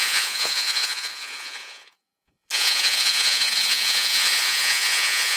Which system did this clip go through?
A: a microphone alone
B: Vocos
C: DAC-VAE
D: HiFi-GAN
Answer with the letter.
B